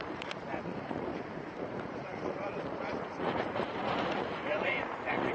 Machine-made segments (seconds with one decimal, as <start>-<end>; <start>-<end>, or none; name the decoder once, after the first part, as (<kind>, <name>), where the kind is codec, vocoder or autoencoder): 0.0-1.1 (vocoder, Vocos); 1.6-5.3